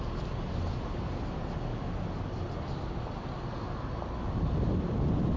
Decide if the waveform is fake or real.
real